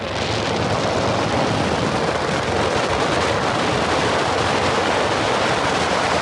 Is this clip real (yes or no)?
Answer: yes